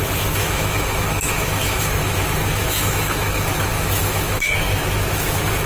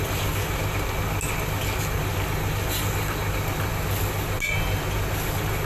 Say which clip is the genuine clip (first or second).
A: second